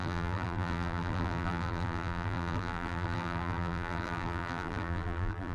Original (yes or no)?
no